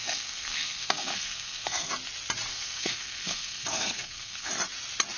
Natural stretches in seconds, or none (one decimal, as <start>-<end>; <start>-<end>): 1.9-2.5; 4.5-5.2